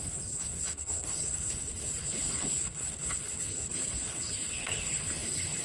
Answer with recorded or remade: remade